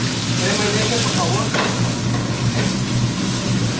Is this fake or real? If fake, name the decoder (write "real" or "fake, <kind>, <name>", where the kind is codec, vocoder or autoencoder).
real